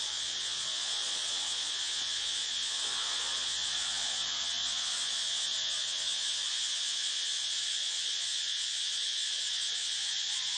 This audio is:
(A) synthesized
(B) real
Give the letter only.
A